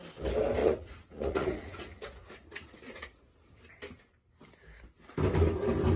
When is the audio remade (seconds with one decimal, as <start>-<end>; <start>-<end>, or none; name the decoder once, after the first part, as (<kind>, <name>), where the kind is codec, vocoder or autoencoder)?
0.6-3.3 (vocoder, Vocos)